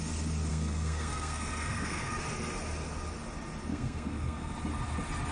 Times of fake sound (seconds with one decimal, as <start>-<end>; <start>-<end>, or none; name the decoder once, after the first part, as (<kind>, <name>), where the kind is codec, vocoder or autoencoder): 0.5-2.2 (codec, SNAC); 3.7-4.5